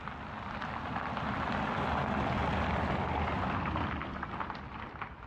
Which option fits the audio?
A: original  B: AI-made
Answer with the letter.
A